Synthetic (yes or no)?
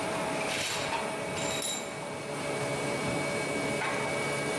no